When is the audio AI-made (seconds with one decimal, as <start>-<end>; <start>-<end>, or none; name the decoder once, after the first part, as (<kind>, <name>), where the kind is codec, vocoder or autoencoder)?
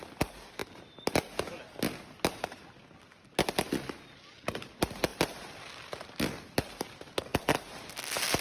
5.1-5.6 (vocoder, BigVGAN v2)